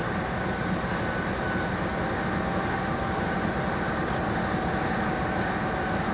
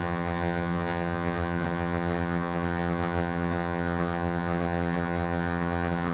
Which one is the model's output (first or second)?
second